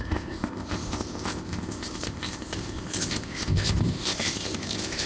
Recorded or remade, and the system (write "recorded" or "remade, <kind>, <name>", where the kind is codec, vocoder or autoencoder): remade, codec, ZipCodec